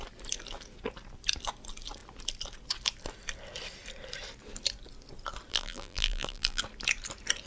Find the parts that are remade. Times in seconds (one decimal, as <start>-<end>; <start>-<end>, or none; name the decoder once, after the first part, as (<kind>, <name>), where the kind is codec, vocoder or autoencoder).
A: 5.5-6.6 (vocoder, BigVGAN v2)